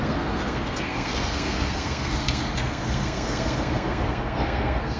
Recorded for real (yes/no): no